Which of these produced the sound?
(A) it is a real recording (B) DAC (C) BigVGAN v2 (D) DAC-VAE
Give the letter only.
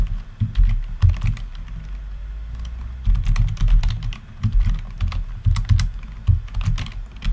A